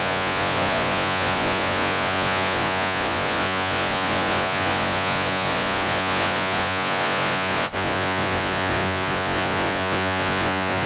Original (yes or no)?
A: no